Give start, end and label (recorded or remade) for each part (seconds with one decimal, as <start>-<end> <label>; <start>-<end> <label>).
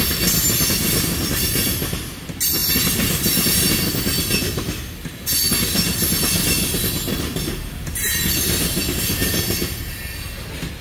0.0-1.2 recorded; 1.2-2.0 remade; 2.0-2.6 recorded; 2.6-3.7 remade; 3.7-7.1 recorded; 7.1-9.9 remade; 9.9-10.8 recorded